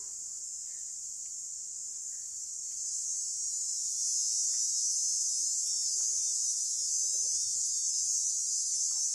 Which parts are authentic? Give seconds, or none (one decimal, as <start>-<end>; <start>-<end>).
0.0-1.8; 3.1-9.1